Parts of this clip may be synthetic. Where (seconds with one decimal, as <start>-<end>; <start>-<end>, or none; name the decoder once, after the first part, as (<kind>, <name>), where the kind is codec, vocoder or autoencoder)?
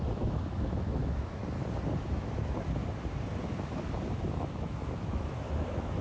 0.0-1.4 (autoencoder, DAC-VAE); 2.0-2.8; 3.5-6.0